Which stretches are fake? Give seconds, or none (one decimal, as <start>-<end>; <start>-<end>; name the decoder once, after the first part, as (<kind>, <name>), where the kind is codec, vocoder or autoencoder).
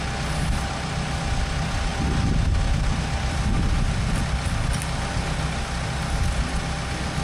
none